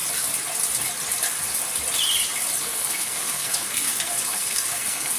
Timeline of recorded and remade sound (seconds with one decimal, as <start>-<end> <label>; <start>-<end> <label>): 0.0-2.6 recorded; 2.6-5.2 remade